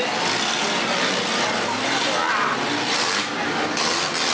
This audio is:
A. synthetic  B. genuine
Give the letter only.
B